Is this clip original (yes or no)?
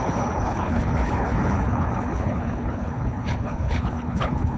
no